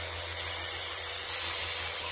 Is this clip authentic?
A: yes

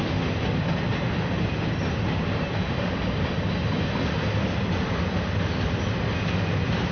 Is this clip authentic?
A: yes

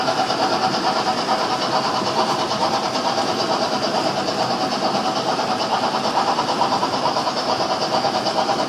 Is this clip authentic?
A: no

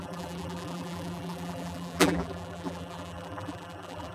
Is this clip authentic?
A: no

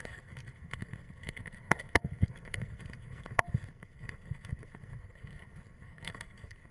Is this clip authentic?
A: no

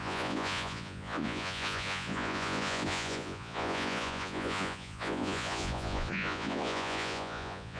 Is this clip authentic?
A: no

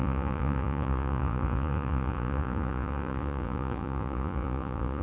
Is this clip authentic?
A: no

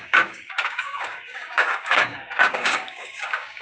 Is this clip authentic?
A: no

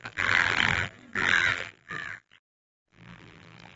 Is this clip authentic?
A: no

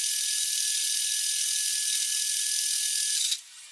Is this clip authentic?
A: yes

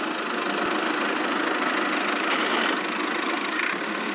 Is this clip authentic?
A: yes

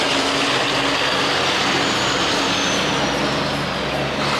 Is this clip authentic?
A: yes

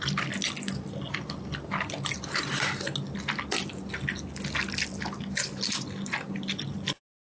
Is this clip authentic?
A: yes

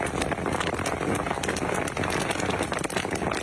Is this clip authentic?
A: yes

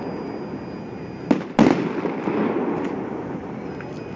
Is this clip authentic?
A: yes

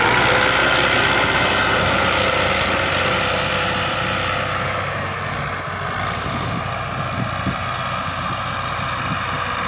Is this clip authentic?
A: yes